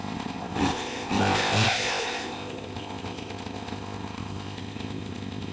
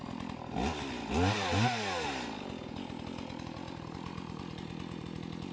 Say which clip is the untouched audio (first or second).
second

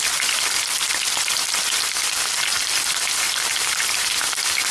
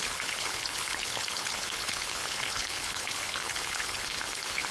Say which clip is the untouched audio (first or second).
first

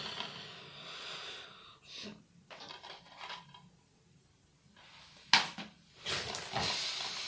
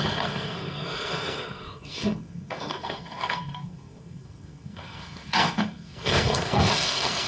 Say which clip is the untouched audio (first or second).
first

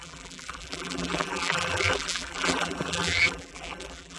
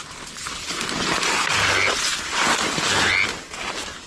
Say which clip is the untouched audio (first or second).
second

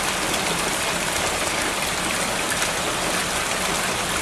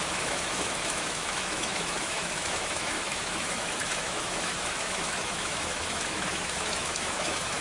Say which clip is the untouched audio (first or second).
first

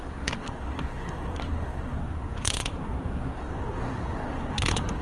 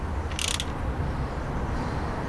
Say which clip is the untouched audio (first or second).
second